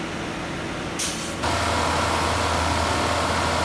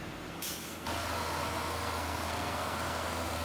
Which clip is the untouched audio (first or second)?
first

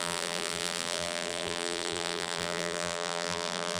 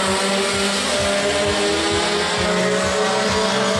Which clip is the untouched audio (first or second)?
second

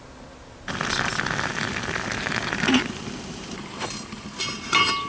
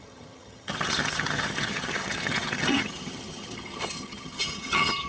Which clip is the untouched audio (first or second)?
first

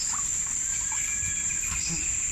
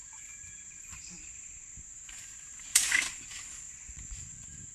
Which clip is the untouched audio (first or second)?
first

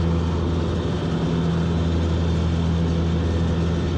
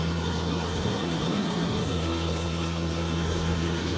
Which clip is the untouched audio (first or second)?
first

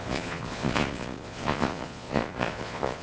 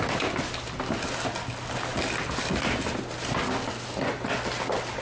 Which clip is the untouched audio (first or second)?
second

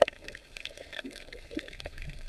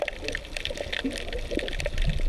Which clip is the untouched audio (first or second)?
second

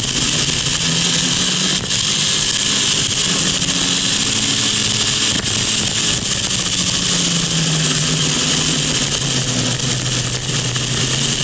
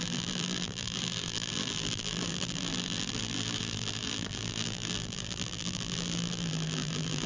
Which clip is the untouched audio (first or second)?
first